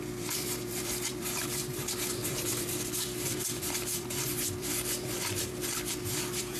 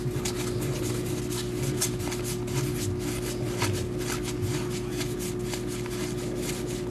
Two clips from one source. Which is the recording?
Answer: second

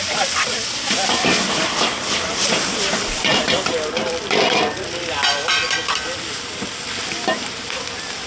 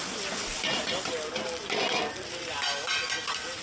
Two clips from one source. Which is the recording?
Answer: second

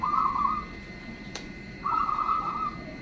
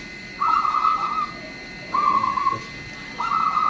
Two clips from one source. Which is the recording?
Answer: second